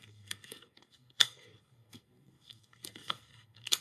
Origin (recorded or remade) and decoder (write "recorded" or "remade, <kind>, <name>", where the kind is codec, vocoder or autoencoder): remade, codec, SNAC